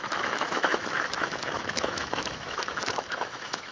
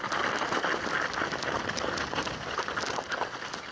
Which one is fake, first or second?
first